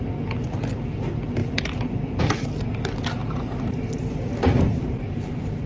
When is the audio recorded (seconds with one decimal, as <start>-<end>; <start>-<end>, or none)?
0.0-1.4; 2.2-3.2; 5.0-5.7